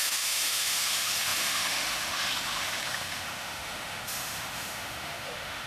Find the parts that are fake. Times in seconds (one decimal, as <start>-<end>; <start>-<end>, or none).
0.0-5.7